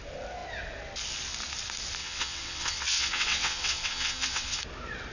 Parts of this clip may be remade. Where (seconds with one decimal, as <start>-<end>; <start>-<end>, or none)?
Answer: 2.0-4.6